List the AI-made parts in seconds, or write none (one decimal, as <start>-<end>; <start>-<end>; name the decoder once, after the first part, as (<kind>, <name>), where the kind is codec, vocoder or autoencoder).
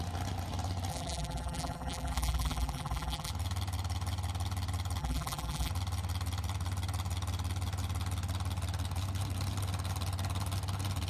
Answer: 0.9-3.3 (vocoder, BigVGAN v2); 5.0-5.7